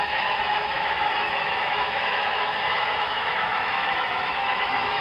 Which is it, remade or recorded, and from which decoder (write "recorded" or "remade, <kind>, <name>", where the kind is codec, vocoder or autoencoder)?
remade, autoencoder, DAC-VAE